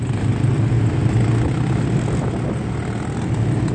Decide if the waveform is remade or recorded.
recorded